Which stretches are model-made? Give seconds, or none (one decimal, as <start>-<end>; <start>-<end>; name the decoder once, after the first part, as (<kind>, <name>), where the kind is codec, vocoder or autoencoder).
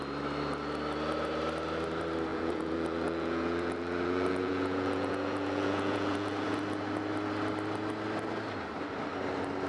2.3-6.6 (vocoder, Vocos)